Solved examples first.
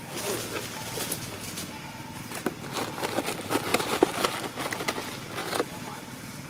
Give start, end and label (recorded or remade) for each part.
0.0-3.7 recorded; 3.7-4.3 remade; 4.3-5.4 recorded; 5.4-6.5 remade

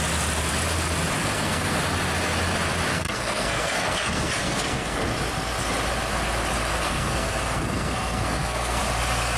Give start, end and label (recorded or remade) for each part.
0.0-1.2 recorded; 1.2-1.8 remade; 1.8-2.9 recorded; 2.9-5.0 remade; 5.0-6.7 recorded; 6.7-8.8 remade; 8.8-9.4 recorded

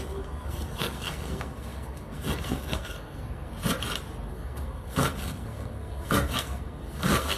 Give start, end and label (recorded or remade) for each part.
0.0-3.5 remade; 3.5-4.3 recorded; 4.3-7.4 remade